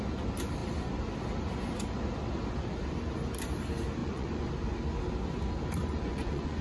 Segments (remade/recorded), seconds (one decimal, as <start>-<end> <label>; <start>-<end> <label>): 0.0-4.0 recorded; 4.0-4.5 remade; 4.5-5.8 recorded; 5.8-6.6 remade